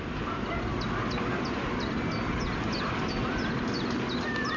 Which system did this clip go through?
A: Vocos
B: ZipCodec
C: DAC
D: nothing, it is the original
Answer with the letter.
D